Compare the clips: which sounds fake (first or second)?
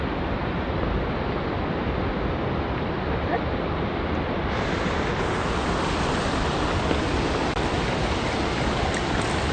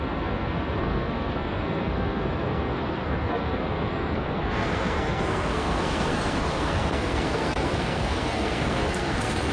second